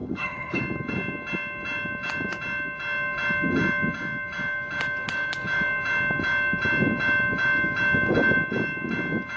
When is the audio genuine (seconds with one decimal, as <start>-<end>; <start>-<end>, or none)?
0.6-9.4